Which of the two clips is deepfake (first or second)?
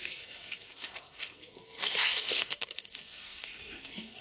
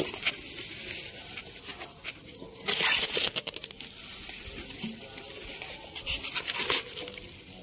first